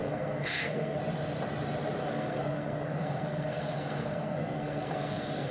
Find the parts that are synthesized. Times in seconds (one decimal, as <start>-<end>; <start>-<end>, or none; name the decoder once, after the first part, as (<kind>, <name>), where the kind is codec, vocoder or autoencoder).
0.0-1.0 (codec, SNAC); 2.0-5.5